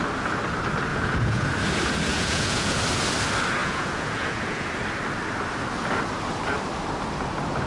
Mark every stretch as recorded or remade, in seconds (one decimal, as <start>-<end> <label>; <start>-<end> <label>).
0.0-0.9 recorded; 0.9-1.5 remade; 1.5-2.1 recorded; 2.1-2.8 remade; 2.8-3.6 recorded; 3.6-4.7 remade; 4.7-7.7 recorded